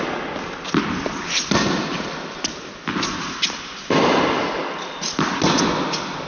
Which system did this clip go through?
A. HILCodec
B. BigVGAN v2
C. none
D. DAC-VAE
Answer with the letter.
C